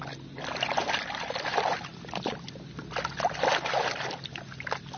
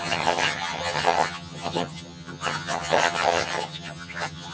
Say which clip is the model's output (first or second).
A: second